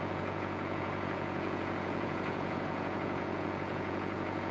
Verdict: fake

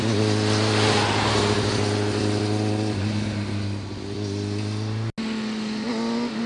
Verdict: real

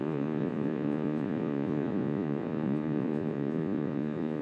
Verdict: fake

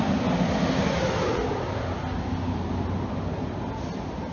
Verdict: real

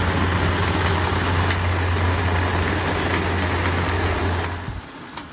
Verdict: real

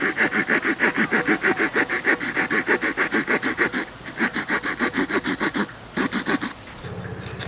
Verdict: real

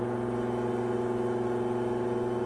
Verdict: real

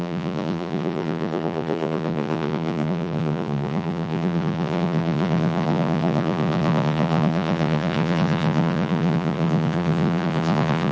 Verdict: fake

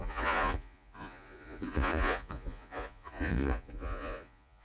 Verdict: fake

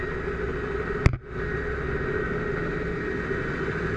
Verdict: real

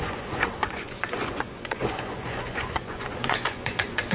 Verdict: fake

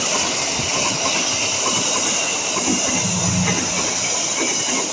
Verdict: real